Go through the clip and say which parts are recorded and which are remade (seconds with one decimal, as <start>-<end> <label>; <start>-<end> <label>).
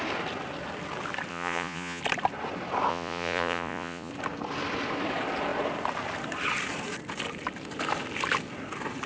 0.0-1.3 recorded; 1.3-2.0 remade; 2.0-2.9 recorded; 2.9-4.1 remade; 4.1-9.1 recorded